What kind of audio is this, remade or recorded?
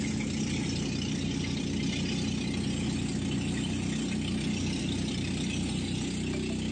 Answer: recorded